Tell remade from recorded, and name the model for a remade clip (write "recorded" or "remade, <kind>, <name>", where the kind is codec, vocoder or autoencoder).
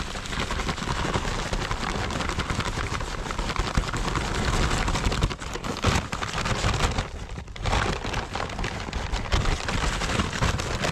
recorded